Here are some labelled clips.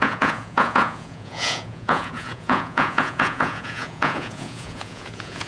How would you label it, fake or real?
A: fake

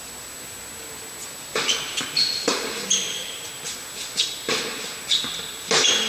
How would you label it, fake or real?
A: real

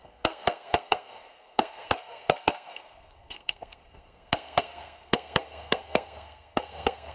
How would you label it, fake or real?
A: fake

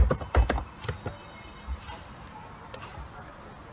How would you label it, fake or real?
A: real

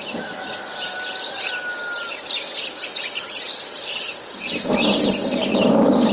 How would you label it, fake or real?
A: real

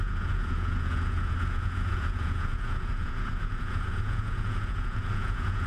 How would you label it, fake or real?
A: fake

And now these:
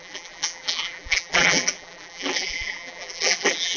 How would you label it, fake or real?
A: fake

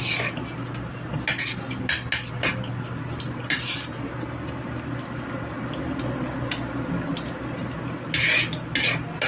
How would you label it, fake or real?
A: real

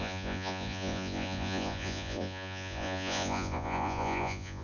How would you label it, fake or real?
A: fake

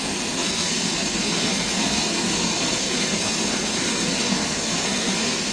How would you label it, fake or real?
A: fake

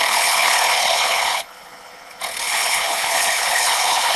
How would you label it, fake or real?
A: fake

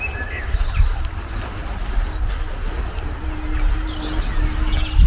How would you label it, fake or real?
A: real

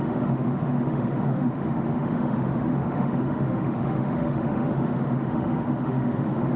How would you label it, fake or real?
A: fake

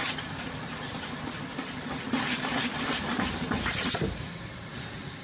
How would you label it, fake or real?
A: real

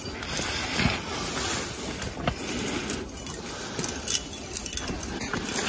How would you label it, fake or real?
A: real